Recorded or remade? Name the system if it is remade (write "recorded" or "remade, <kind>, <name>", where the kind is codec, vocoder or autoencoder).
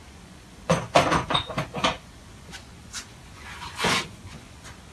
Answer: remade, vocoder, Vocos